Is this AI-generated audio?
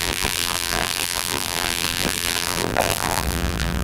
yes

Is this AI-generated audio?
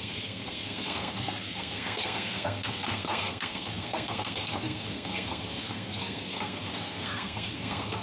yes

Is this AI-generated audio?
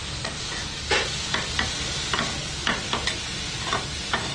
no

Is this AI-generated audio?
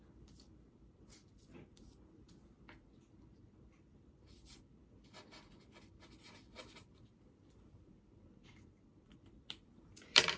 yes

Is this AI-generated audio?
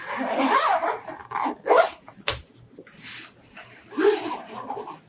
no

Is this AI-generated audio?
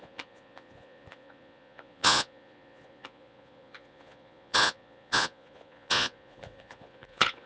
yes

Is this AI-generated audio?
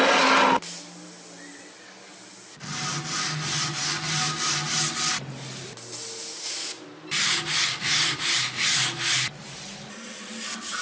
no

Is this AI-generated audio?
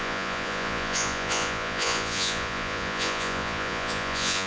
yes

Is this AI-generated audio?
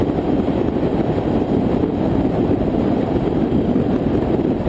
no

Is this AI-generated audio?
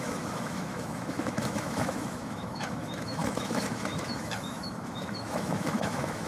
yes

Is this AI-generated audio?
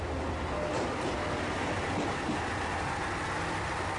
no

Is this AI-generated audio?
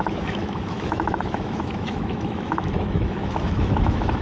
yes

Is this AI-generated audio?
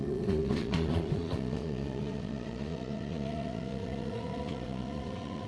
yes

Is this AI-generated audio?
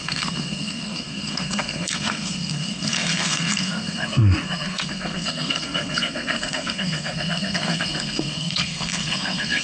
yes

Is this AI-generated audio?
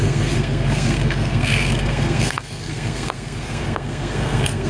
yes